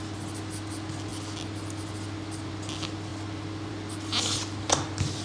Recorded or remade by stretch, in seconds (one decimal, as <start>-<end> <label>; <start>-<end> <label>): 0.0-5.2 recorded